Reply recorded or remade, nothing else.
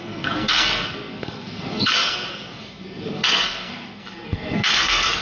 remade